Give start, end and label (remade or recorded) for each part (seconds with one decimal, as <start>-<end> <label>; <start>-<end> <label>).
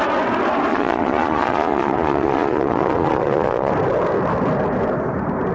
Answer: 0.0-0.7 recorded; 0.7-3.7 remade; 3.7-5.5 recorded